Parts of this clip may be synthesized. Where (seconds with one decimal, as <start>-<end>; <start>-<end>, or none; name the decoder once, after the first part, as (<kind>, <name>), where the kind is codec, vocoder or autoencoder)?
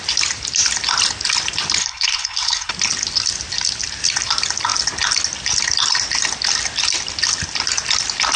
1.8-2.7 (codec, HILCodec)